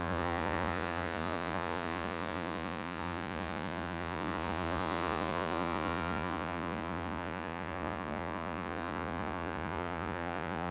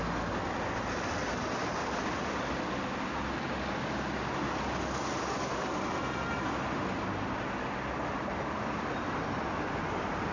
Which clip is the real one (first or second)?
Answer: second